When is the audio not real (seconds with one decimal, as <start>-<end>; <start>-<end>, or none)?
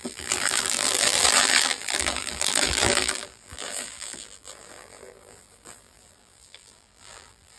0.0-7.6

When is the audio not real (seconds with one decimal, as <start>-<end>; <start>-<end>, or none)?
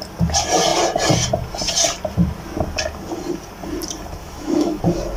4.2-4.8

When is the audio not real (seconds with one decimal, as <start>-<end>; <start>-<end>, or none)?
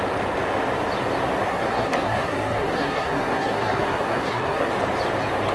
1.5-4.7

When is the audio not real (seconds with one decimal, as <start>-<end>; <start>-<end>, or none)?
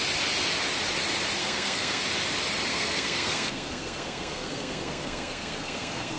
1.4-2.0; 2.7-6.2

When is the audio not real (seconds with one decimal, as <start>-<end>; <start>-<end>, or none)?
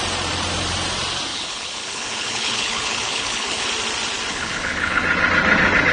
1.3-3.7; 4.3-5.0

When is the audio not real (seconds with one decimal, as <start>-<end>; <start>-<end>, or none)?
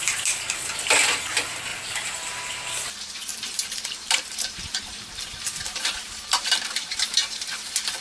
1.7-2.3; 3.3-8.0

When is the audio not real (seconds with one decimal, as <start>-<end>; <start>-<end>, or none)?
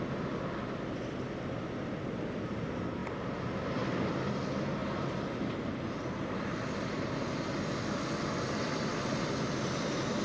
0.0-3.0; 3.7-4.8; 8.4-8.9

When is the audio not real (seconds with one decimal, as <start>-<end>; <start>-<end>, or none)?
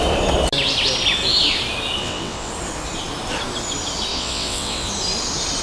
2.0-2.5; 4.1-4.9